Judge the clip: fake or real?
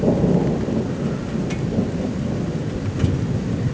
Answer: real